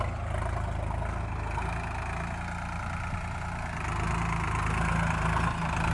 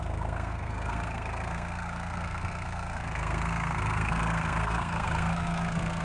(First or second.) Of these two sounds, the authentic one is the first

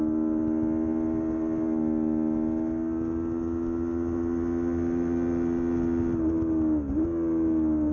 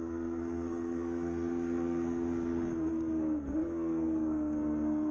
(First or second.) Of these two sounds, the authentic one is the first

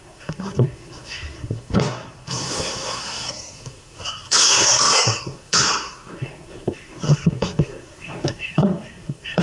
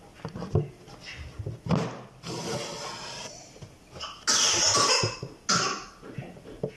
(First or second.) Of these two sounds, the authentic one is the second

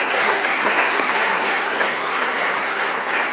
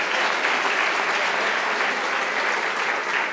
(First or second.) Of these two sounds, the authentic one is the second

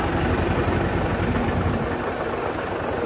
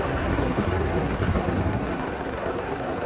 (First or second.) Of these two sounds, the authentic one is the first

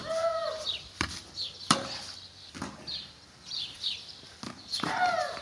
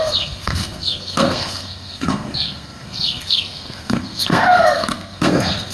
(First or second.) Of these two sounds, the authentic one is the first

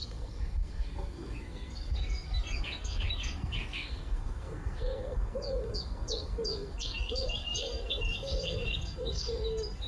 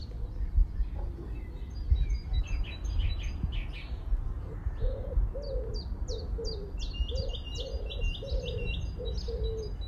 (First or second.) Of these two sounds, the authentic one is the second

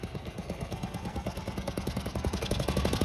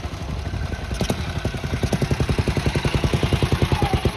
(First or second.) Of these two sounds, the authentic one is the second